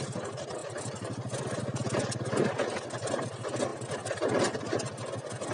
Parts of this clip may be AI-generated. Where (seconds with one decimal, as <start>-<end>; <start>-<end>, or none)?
0.6-1.6